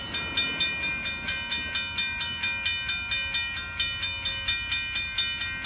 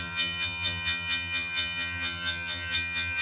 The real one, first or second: first